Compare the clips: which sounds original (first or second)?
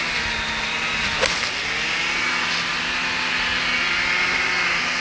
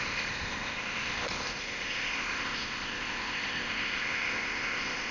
first